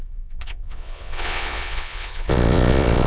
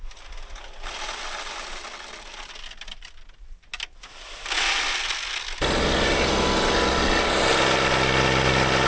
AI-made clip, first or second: first